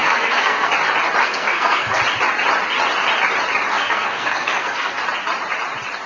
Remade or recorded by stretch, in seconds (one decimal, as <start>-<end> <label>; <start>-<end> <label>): 0.0-0.7 remade; 0.7-1.2 recorded; 1.2-2.0 remade; 2.0-3.7 recorded; 3.7-5.0 remade; 5.0-6.1 recorded